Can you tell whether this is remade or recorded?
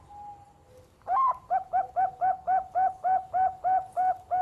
recorded